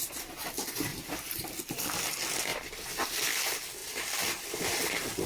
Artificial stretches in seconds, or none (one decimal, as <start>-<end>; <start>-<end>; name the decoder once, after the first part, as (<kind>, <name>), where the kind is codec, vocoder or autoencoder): 0.9-1.8 (vocoder, BigVGAN v2); 2.5-3.3